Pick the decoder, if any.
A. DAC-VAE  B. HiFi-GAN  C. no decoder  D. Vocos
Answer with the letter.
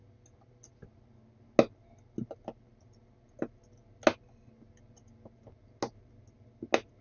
C